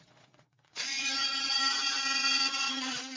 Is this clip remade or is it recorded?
remade